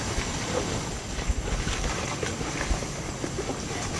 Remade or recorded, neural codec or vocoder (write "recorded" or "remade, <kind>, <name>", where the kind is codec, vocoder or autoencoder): recorded